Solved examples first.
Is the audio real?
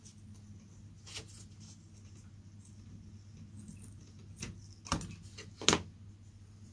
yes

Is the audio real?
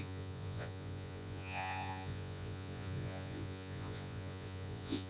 no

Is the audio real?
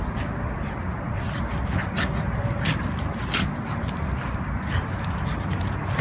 yes